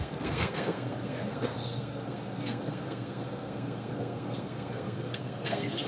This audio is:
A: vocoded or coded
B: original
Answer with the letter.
A